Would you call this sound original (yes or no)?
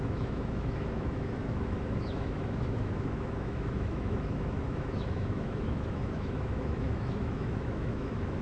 no